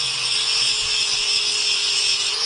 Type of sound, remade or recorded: remade